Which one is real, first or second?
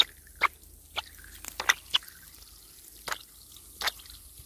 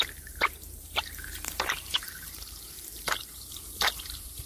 first